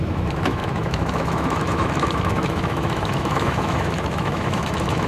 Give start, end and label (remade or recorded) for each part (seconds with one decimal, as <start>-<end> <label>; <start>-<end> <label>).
0.0-5.1 remade